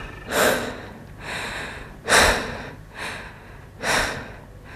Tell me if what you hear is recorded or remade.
recorded